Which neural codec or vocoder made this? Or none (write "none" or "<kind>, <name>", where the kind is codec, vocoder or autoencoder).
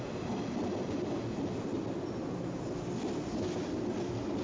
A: none